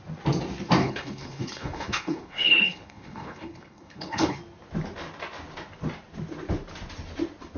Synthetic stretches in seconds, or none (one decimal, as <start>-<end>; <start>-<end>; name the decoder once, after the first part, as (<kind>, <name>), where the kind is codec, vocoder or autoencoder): 0.8-4.4 (codec, HILCodec)